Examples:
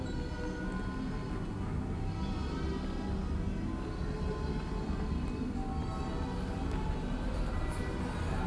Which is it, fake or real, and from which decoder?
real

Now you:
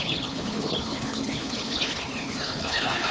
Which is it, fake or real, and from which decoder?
fake, codec, HILCodec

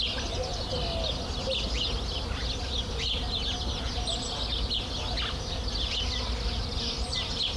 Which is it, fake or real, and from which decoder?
real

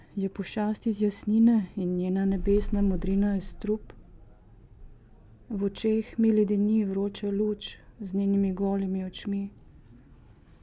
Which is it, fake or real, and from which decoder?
real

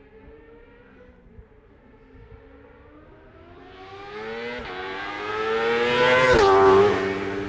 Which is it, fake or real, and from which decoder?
real